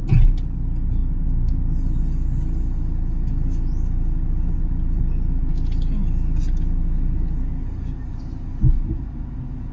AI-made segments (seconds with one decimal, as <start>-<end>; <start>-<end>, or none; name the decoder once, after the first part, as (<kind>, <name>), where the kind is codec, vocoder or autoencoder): none